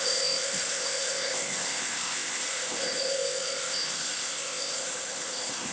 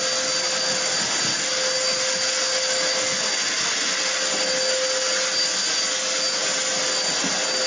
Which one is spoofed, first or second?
first